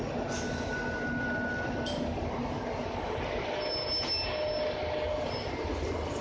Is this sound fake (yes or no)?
no